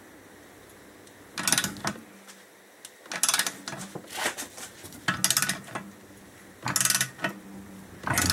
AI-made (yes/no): no